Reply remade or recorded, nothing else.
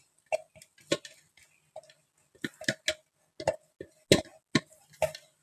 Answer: recorded